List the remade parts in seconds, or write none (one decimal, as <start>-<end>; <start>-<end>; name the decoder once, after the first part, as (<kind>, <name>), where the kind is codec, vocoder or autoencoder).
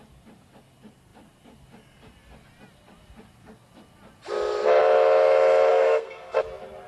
5.7-6.4 (codec, SNAC)